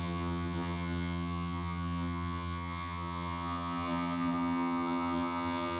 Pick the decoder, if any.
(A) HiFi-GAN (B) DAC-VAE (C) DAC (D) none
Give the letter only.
A